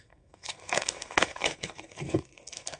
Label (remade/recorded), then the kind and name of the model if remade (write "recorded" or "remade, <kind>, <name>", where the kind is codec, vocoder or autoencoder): remade, codec, SNAC